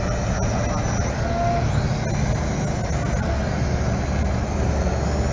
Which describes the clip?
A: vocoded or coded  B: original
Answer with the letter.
B